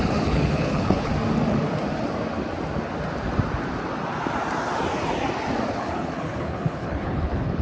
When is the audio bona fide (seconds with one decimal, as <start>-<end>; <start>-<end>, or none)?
1.1-5.7